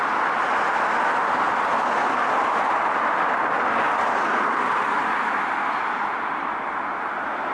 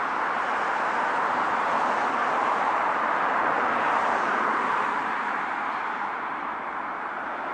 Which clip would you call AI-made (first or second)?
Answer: second